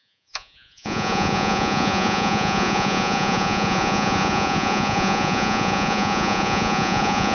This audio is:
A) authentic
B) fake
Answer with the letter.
B